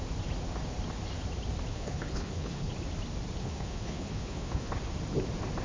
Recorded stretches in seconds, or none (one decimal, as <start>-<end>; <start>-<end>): 0.0-1.7; 2.7-3.4; 4.7-5.6